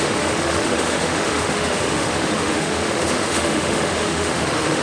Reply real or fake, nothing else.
fake